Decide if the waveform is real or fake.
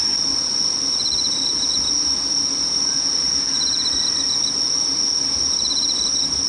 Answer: real